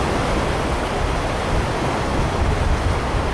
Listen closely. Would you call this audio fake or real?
real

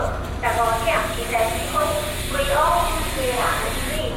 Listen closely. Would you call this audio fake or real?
real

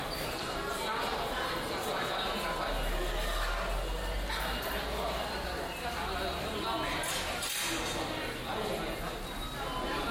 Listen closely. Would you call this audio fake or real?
real